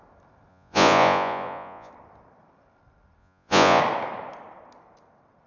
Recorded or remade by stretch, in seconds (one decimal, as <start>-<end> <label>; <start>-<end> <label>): 0.0-0.5 recorded; 0.5-1.9 remade; 1.9-3.2 recorded; 3.2-3.8 remade; 3.8-5.5 recorded